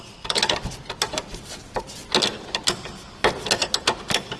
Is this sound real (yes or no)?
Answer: yes